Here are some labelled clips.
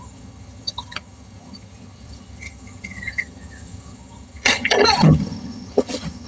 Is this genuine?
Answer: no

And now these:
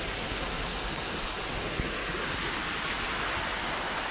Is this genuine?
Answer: yes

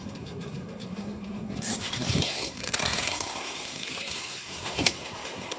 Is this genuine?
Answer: no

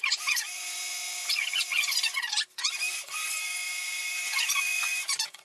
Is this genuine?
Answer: no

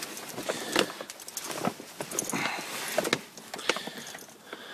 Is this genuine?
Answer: yes